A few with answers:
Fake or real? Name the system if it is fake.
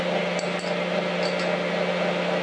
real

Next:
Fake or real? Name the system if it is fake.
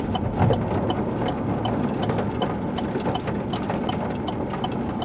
real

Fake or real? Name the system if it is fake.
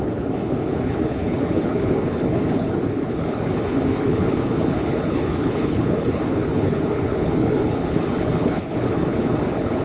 fake, codec, HILCodec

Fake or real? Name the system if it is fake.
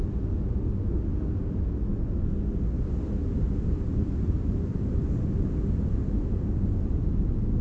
real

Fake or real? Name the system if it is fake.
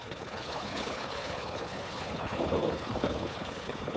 fake, codec, HILCodec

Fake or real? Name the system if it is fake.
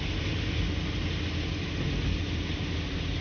real